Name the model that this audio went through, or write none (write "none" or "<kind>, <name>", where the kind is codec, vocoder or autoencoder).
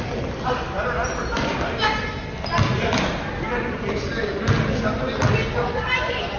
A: none